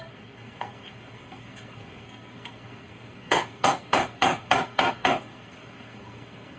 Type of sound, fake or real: fake